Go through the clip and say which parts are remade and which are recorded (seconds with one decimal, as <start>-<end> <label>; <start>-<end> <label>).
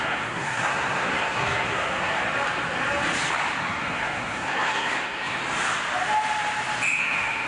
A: 0.0-2.2 remade; 2.2-3.6 recorded; 3.6-5.4 remade; 5.4-7.0 recorded; 7.0-7.5 remade